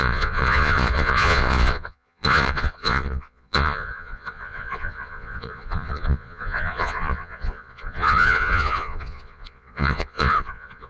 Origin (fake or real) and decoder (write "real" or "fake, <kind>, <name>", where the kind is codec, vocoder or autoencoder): fake, vocoder, Vocos